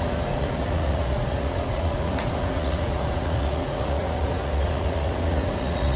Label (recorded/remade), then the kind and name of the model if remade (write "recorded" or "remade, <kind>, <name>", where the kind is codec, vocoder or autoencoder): remade, vocoder, Vocos